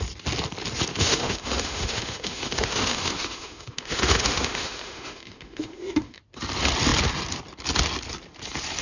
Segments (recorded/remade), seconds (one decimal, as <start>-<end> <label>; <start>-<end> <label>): 0.0-0.9 recorded; 0.9-6.2 remade; 6.2-8.8 recorded